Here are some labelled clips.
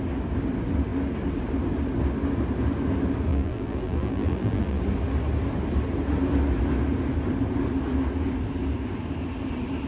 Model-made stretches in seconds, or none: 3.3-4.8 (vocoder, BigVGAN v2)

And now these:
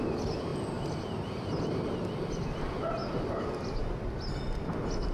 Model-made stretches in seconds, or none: 0.5-1.3 (vocoder, BigVGAN v2)

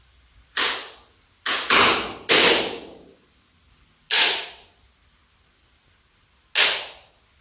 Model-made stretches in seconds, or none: none

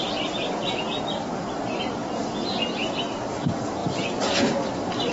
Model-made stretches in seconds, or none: none

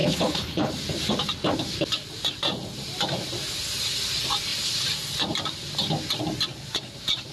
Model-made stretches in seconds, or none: 0.0-0.7 (codec, HILCodec)

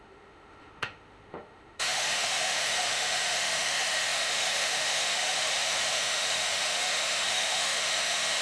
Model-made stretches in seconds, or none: 0.0-8.4 (autoencoder, DAC-VAE)